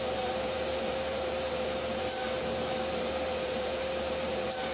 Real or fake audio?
fake